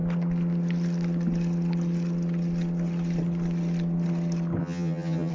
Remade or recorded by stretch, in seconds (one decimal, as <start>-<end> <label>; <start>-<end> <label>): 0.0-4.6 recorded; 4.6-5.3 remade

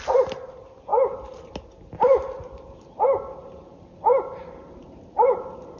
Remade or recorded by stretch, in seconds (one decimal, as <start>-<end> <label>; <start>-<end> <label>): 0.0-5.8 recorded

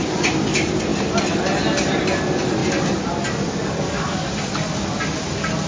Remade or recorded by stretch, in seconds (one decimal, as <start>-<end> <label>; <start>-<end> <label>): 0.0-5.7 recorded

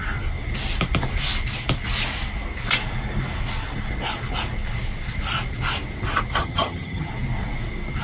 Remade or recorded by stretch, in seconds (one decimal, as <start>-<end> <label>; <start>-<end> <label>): 0.0-6.4 recorded; 6.4-7.1 remade; 7.1-8.0 recorded

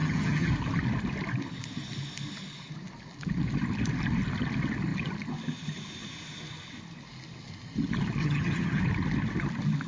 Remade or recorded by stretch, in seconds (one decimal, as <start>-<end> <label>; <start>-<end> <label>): 0.0-0.5 remade; 0.5-8.2 recorded; 8.2-8.8 remade; 8.8-9.9 recorded